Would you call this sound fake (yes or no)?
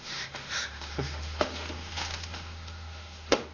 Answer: yes